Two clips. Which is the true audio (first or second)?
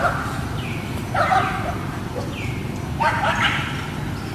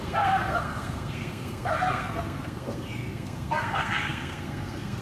first